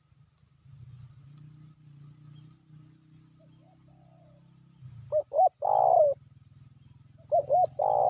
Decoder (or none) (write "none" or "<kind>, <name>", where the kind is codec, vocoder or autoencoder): none